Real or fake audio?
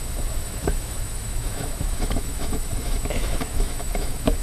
fake